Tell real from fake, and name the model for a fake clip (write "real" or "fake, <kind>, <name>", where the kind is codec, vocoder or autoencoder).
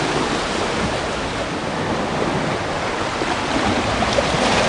real